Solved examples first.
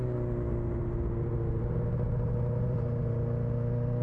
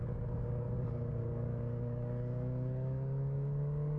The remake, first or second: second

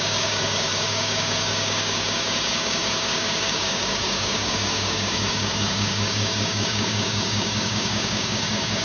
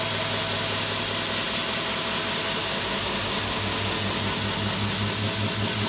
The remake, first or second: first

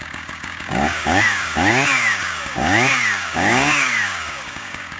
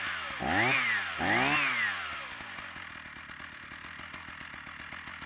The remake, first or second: first